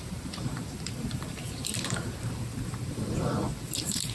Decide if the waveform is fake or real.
fake